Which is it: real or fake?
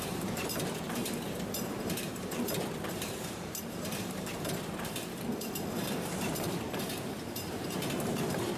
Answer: fake